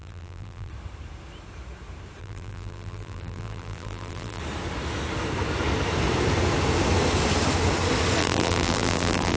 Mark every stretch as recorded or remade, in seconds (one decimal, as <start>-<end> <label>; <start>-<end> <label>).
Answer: 0.0-0.7 remade; 0.7-2.2 recorded; 2.2-4.4 remade; 4.4-8.2 recorded; 8.2-9.4 remade

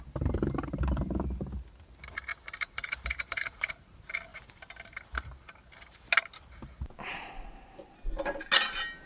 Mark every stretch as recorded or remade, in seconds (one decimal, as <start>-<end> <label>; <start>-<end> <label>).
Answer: 0.0-2.3 recorded; 2.3-3.7 remade; 3.7-4.3 recorded; 4.3-4.9 remade; 4.9-9.1 recorded

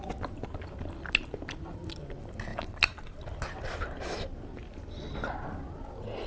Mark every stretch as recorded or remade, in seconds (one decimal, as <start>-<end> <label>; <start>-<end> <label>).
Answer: 0.0-2.5 recorded; 2.5-3.0 remade; 3.0-6.3 recorded

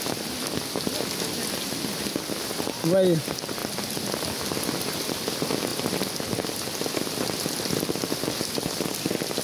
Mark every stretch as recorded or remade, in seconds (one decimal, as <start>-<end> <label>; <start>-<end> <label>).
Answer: 0.0-9.4 recorded

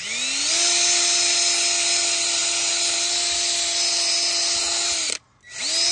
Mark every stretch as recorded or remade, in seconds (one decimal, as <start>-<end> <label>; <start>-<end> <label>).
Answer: 0.0-5.9 recorded